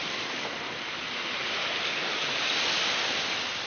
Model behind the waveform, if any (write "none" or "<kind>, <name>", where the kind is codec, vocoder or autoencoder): none